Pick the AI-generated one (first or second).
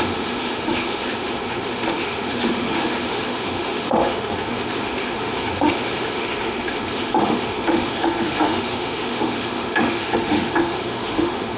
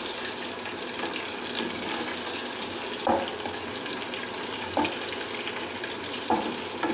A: first